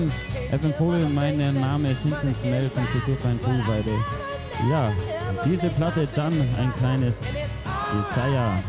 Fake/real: real